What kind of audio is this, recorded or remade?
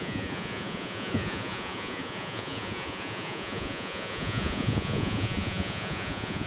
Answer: remade